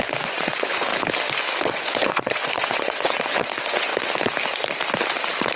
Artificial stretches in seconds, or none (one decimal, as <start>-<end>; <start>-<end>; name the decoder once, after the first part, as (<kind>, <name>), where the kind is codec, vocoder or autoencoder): 0.0-0.9 (vocoder, Vocos); 1.6-3.9